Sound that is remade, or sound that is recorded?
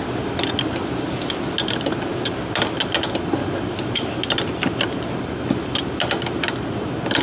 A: recorded